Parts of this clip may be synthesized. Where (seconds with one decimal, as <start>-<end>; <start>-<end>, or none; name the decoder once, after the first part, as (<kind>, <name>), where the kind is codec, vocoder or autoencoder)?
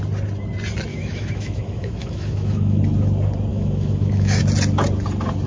0.9-2.8 (autoencoder, DAC-VAE); 3.5-4.4